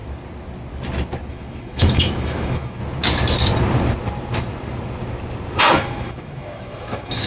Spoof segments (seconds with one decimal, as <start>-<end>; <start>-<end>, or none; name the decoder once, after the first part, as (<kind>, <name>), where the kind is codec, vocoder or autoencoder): 1.3-2.8 (autoencoder, DAC-VAE); 5.6-7.3